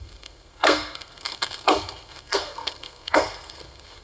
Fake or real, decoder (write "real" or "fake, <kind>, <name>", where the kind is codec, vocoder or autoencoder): fake, codec, SNAC